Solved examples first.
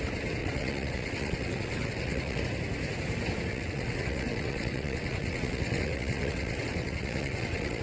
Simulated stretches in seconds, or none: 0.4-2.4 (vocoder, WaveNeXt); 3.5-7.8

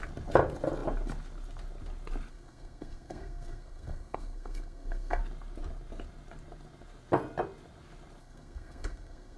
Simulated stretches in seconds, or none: 2.3-5.2 (codec, SNAC); 8.2-9.4